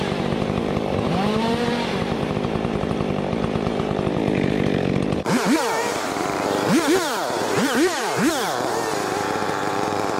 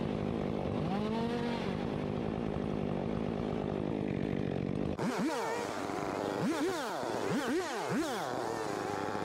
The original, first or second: second